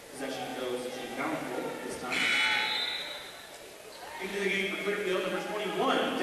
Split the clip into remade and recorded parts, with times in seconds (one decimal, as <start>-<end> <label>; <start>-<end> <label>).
0.0-0.5 recorded; 0.5-1.2 remade; 1.2-4.3 recorded; 4.3-5.4 remade; 5.4-6.2 recorded